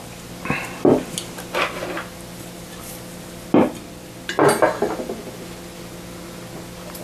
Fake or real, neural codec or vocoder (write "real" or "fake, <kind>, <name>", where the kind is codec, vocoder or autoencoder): real